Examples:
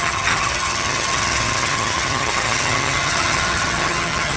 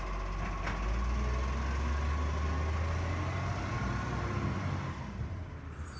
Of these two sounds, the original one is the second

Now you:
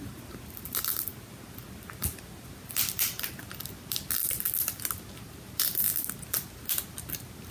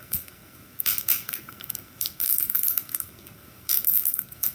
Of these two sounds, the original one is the first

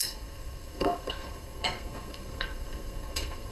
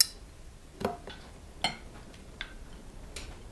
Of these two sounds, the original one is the second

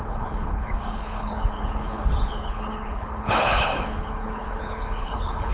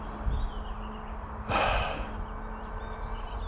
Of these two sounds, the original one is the second